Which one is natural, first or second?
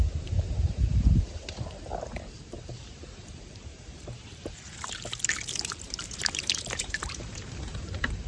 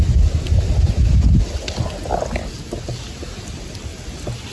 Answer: second